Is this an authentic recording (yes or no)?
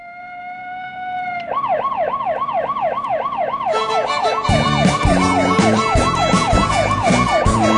no